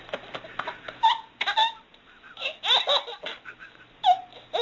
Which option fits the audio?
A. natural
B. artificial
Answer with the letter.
A